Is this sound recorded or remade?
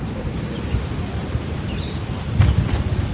recorded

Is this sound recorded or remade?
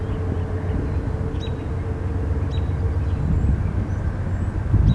recorded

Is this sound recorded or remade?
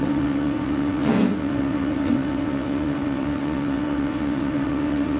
remade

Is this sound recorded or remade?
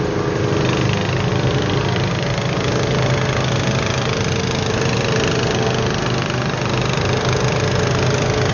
recorded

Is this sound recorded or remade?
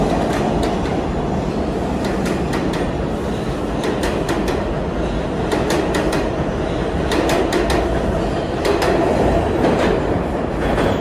recorded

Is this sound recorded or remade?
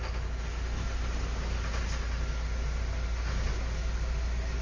recorded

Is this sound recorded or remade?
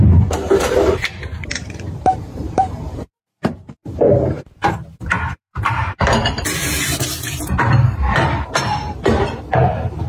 remade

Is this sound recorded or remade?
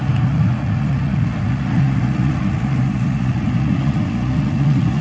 remade